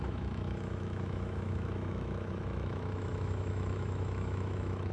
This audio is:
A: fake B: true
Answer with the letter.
A